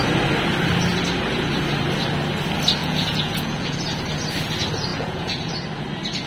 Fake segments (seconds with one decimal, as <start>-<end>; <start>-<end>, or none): 2.8-3.8; 4.9-5.5